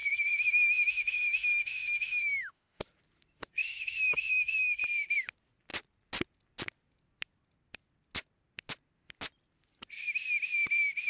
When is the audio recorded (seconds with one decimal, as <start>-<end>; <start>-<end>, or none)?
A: 2.8-3.6; 4.8-11.1

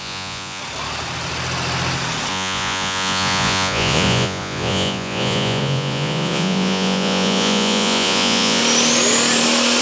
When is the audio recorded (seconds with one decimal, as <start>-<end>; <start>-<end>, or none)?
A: 0.6-2.3; 8.6-9.8

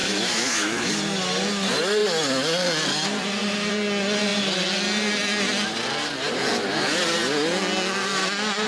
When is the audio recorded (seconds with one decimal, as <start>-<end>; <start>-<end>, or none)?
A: 0.9-8.7

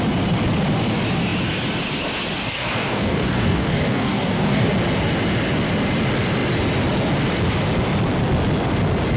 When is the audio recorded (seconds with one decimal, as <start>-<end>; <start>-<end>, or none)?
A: 0.0-2.4; 4.7-9.2

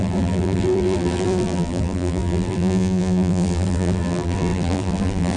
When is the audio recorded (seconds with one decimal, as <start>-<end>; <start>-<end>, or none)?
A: none

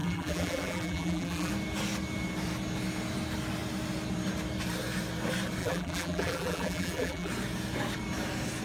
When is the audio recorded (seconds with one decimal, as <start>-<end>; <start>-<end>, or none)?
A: 1.5-5.6; 7.3-8.6

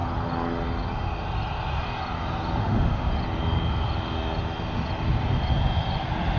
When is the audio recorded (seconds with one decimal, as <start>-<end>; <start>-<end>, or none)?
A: 0.0-2.6; 3.1-6.4